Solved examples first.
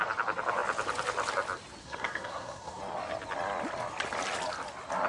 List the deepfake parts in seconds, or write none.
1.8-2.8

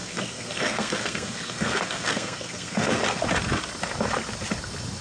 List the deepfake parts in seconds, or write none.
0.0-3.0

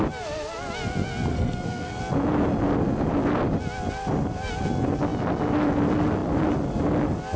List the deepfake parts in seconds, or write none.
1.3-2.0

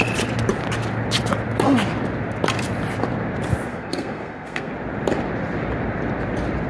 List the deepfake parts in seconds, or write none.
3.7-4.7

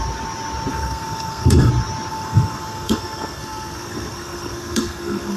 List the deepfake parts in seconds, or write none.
0.7-1.7; 2.1-5.4

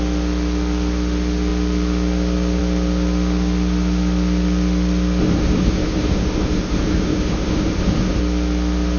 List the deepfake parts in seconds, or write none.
5.2-8.2

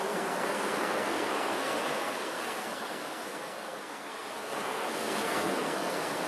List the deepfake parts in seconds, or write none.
0.0-6.3

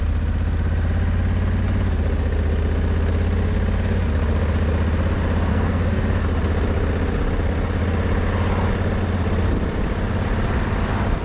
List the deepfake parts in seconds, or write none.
5.5-6.2